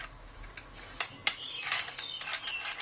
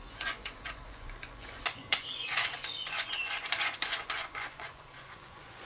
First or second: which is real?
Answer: first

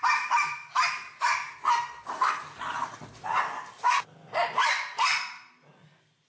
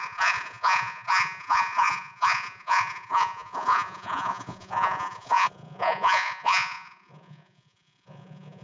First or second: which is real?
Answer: first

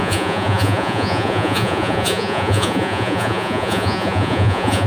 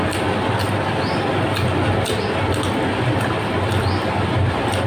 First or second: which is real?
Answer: second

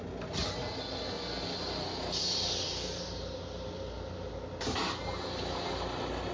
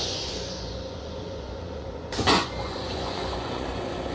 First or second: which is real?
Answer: first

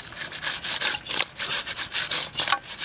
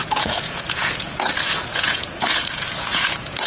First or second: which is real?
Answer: first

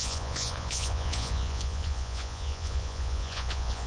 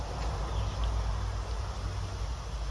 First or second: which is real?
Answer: second